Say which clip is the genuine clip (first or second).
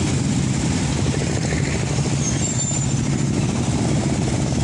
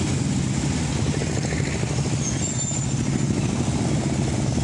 second